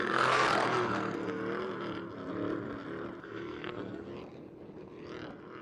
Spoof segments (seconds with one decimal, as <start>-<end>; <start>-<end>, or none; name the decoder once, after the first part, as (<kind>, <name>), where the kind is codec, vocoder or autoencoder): 0.0-1.4 (codec, SNAC); 3.2-4.1